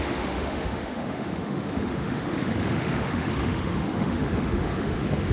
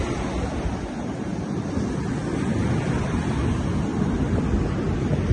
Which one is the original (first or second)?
second